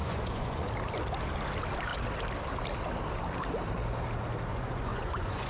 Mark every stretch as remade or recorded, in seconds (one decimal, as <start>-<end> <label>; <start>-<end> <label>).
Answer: 0.0-0.7 remade; 0.7-4.5 recorded; 4.5-5.5 remade